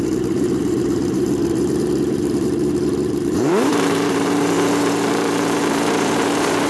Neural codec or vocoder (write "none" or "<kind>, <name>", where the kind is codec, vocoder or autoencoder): vocoder, BigVGAN v2